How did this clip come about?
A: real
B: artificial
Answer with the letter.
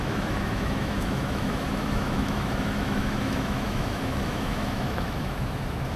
B